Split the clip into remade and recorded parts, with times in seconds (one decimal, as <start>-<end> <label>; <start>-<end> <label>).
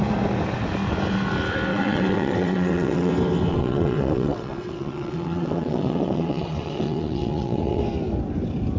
0.0-1.7 recorded; 1.7-3.1 remade; 3.1-3.5 recorded; 3.5-7.8 remade; 7.8-8.8 recorded